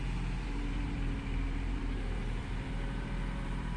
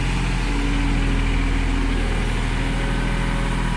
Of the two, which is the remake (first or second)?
first